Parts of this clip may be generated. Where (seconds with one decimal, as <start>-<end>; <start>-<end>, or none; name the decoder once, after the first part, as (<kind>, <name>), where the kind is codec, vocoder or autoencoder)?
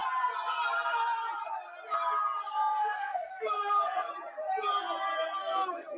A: 2.5-4.1 (codec, SNAC); 5.4-6.0